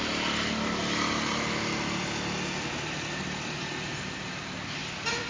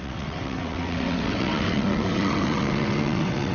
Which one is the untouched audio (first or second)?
first